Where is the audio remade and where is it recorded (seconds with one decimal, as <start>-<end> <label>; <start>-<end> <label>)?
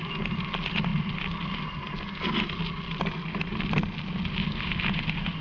0.0-5.4 recorded